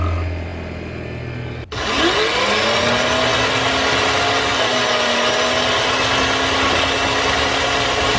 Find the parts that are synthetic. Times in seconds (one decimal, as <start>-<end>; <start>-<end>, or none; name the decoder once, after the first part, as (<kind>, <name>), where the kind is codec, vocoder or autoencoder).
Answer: none